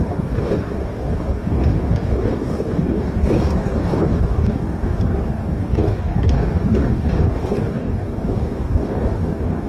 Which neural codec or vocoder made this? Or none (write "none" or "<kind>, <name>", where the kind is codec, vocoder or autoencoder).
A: codec, DAC